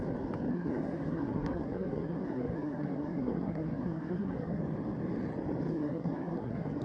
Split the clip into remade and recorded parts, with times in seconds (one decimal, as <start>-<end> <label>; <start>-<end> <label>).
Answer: 0.0-0.5 recorded; 0.5-4.6 remade; 4.6-5.7 recorded; 5.7-6.8 remade